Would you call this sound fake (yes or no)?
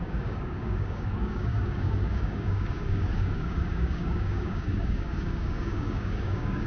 yes